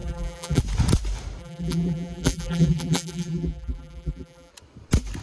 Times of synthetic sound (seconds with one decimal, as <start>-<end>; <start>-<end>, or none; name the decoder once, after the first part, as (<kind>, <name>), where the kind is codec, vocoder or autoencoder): 0.0-0.6 (vocoder, BigVGAN v2); 1.4-4.5